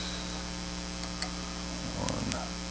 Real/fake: real